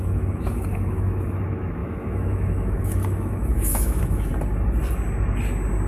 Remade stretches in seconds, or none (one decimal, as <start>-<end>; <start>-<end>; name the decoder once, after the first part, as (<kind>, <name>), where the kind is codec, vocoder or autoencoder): 0.0-4.3 (autoencoder, DAC-VAE)